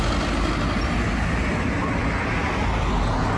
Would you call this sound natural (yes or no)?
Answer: yes